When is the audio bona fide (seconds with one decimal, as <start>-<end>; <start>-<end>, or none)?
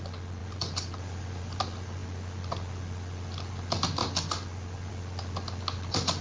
0.0-0.4; 1.6-4.0; 4.9-6.2